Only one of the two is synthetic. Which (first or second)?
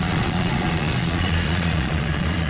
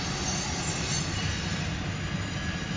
first